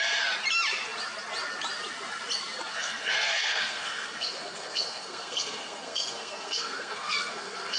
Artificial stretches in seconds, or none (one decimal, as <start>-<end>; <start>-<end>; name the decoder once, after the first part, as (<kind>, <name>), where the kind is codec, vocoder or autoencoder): 2.7-7.8 (codec, SNAC)